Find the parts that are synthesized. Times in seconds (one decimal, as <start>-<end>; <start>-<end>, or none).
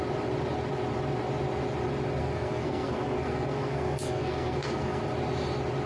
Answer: 2.2-5.0